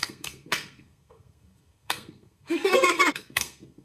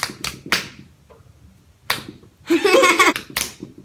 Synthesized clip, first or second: first